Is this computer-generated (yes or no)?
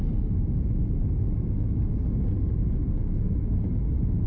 no